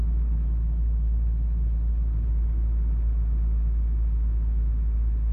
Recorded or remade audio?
recorded